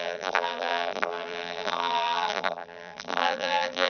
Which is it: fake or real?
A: fake